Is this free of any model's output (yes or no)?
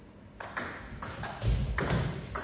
yes